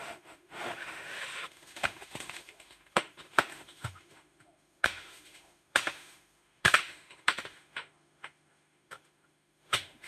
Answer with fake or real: fake